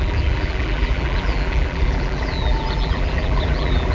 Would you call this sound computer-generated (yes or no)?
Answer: yes